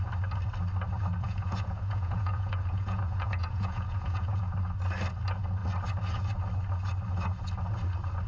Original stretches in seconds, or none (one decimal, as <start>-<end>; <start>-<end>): 0.0-1.2; 4.4-8.3